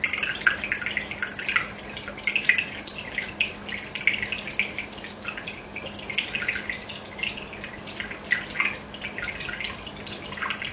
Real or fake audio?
real